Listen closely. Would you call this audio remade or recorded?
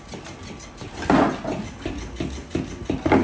recorded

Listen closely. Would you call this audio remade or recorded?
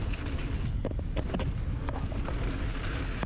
recorded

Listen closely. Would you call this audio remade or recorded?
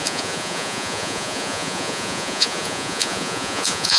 remade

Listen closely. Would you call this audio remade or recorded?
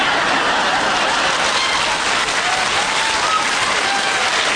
recorded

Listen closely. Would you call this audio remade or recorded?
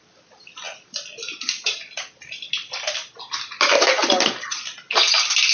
recorded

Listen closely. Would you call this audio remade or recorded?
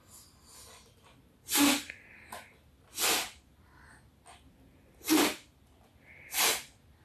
recorded